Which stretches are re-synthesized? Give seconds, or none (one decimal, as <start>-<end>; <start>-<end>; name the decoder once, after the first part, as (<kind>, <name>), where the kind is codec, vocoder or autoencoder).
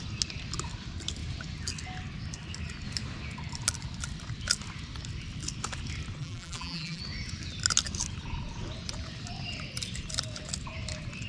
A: 6.2-7.0 (vocoder, BigVGAN v2)